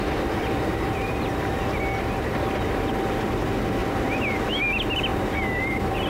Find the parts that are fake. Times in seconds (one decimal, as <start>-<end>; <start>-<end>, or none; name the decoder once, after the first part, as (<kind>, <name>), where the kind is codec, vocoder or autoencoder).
0.7-1.4 (vocoder, BigVGAN v2); 3.8-4.6; 5.1-6.1